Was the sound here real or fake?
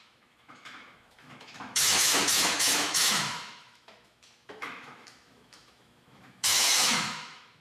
fake